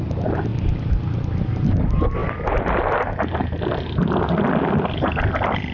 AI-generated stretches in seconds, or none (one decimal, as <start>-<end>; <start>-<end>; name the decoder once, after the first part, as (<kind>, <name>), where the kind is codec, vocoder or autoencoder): none